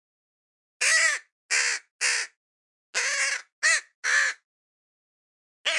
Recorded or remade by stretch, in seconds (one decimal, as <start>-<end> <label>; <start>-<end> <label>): 0.0-5.8 recorded